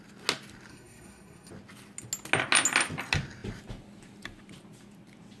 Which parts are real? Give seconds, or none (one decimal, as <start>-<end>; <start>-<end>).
0.0-0.7; 1.5-5.4